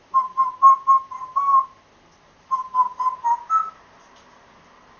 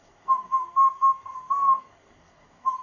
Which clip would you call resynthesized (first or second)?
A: second